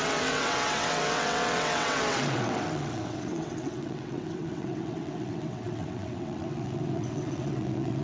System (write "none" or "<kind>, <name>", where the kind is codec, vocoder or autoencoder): vocoder, WaveNeXt